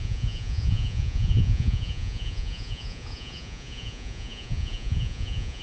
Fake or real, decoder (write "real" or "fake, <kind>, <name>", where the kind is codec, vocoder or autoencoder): fake, vocoder, Vocos